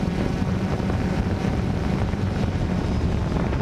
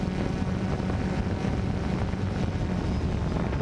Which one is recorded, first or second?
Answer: second